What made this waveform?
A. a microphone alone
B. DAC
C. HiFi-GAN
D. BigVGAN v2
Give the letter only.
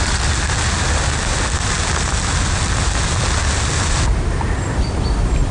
A